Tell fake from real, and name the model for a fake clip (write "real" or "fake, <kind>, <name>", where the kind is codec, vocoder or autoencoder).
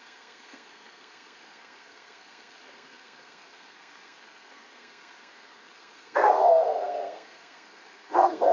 fake, codec, SNAC